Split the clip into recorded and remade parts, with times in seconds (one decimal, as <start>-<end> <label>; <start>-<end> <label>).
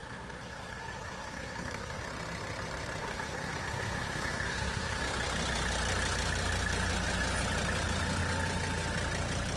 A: 0.0-2.0 remade; 2.0-3.0 recorded; 3.0-5.0 remade; 5.0-9.6 recorded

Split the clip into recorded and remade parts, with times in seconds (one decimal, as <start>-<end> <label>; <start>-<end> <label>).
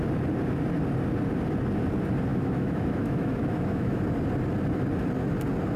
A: 0.0-2.3 recorded; 2.3-4.0 remade; 4.0-5.8 recorded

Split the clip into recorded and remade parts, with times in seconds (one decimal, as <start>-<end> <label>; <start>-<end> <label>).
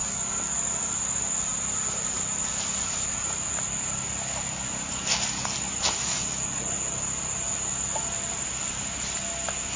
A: 0.0-9.8 recorded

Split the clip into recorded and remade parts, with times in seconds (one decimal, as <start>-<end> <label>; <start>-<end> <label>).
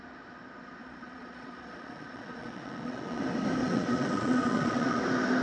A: 0.0-0.8 recorded; 0.8-3.2 remade; 3.2-3.6 recorded; 3.6-5.0 remade; 5.0-5.4 recorded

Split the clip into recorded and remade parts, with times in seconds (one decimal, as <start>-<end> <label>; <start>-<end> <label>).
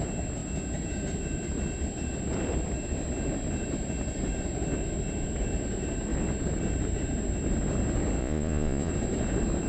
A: 0.0-8.2 recorded; 8.2-8.9 remade; 8.9-9.7 recorded